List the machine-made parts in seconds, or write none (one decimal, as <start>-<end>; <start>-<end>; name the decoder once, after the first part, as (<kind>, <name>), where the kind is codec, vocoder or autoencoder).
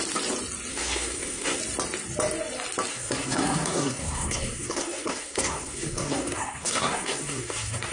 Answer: 0.7-1.6 (codec, SNAC); 2.9-7.9